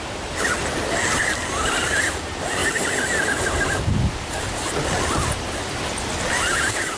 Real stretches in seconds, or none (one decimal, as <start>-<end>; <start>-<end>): 0.0-7.0